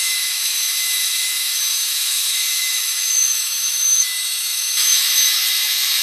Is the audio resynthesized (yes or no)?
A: yes